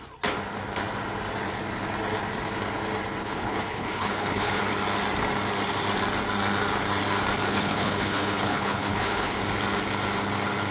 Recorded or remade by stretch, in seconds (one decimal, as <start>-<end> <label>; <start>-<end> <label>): 0.0-3.2 recorded; 3.2-4.6 remade; 4.6-7.5 recorded; 7.5-9.4 remade; 9.4-10.7 recorded